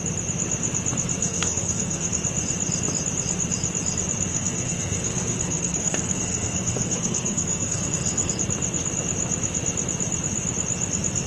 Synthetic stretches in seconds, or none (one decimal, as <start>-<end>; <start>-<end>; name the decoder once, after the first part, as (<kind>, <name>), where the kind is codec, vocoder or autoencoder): 1.2-2.1 (codec, SNAC); 4.3-8.3

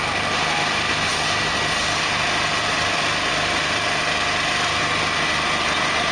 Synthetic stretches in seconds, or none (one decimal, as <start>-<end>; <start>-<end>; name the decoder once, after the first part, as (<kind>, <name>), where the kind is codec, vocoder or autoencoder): none

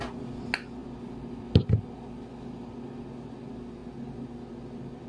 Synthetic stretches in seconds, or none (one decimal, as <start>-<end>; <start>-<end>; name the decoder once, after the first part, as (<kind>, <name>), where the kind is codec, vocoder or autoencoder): none

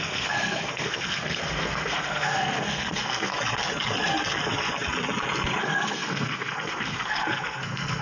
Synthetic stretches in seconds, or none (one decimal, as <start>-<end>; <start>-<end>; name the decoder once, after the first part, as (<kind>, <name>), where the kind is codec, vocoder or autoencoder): 0.0-3.3 (codec, SNAC); 5.6-8.0

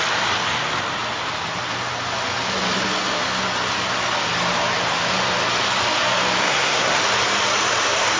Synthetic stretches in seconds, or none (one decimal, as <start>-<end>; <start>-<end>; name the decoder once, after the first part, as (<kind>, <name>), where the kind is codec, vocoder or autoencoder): 6.4-7.0 (codec, SNAC)

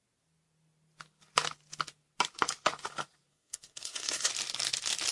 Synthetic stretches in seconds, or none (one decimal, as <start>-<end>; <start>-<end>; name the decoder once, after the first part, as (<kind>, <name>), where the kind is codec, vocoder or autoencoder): 3.3-4.3 (codec, SNAC)

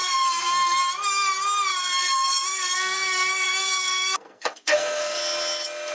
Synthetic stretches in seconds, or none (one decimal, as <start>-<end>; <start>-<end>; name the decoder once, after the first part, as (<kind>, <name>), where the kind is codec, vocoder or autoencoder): 0.0-0.8 (codec, SNAC); 1.7-5.2

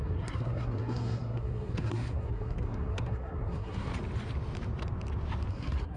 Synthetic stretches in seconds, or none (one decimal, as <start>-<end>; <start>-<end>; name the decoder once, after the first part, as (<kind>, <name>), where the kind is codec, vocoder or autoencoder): 0.0-3.9 (codec, SNAC); 5.5-6.0